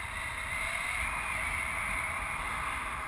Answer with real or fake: real